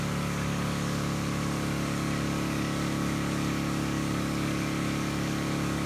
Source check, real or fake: fake